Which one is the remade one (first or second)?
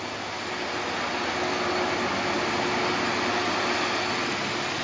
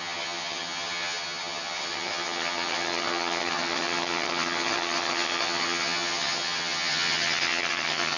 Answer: second